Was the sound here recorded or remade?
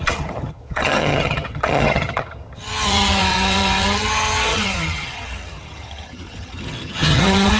remade